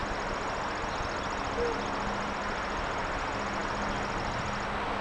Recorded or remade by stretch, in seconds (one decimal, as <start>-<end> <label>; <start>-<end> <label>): 0.0-5.0 recorded